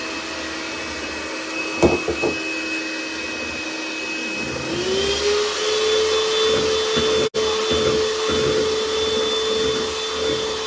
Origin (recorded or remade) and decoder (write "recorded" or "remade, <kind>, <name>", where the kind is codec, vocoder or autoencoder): recorded